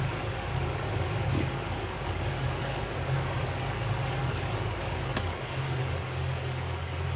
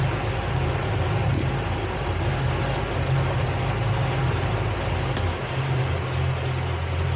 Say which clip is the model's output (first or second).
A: first